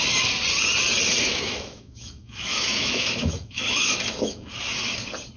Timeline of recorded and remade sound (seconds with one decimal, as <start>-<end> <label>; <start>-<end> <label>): 0.0-1.3 recorded; 1.3-4.5 remade; 4.5-5.4 recorded